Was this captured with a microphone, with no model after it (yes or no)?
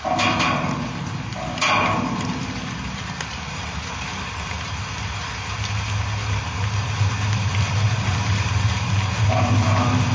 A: yes